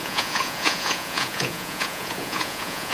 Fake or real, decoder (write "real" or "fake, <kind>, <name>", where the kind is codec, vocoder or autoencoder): fake, vocoder, Vocos